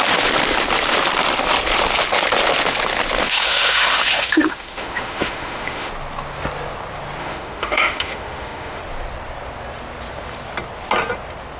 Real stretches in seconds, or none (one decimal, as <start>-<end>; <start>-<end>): 0.0-3.2; 5.9-7.2; 8.8-11.6